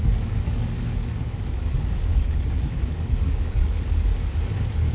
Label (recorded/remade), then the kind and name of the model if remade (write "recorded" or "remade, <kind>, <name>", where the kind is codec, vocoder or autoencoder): remade, codec, DAC